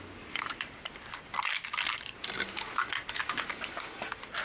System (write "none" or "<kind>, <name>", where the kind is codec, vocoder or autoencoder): none